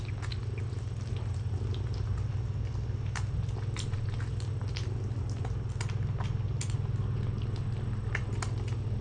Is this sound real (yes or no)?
yes